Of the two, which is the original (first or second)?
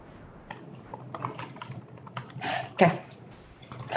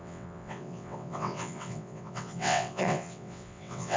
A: first